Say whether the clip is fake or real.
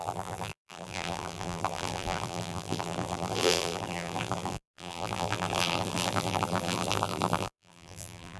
fake